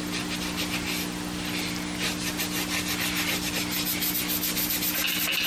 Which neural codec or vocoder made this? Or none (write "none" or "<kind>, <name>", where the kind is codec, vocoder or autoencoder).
none